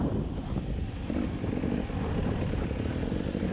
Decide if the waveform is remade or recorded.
recorded